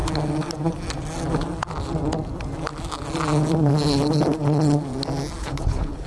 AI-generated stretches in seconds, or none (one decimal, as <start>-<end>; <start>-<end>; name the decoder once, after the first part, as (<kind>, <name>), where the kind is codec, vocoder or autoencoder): 5.4-6.1 (codec, HILCodec)